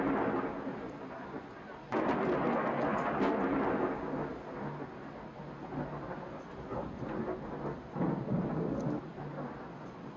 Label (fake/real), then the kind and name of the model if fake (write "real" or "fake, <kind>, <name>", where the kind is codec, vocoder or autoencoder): real